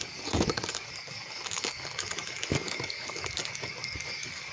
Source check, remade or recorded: remade